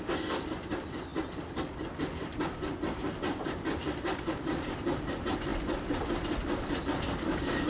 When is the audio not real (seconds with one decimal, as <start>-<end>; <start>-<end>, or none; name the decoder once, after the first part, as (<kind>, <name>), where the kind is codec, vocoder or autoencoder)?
none